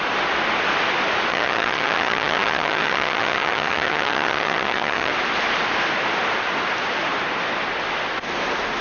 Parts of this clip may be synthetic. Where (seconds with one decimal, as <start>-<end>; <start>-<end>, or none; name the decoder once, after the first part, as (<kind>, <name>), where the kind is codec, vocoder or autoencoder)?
1.3-5.1 (vocoder, HiFi-GAN)